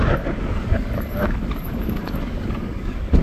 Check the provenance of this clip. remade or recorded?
remade